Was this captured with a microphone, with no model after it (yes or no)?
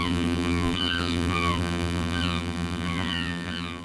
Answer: no